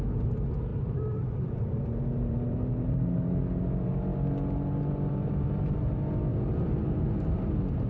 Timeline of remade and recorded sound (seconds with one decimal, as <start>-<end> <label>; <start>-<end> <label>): 0.0-0.7 recorded; 0.7-3.4 remade; 3.4-6.3 recorded; 6.3-7.5 remade; 7.5-7.9 recorded